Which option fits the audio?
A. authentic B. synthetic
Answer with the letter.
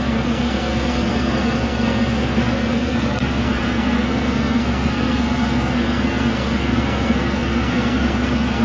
B